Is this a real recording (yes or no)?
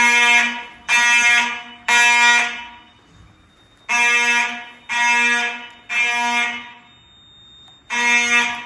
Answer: yes